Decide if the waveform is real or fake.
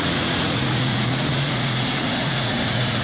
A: fake